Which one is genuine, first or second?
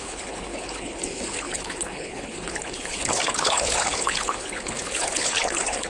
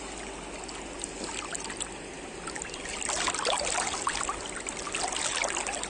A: second